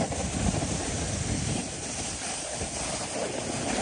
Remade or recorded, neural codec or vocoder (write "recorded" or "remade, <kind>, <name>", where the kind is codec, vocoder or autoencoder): recorded